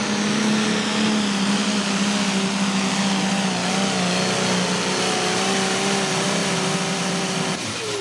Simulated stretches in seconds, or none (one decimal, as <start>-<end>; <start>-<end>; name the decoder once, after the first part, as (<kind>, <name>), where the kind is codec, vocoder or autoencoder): none